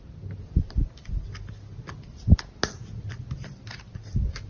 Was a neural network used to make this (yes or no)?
no